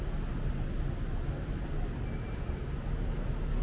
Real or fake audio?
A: real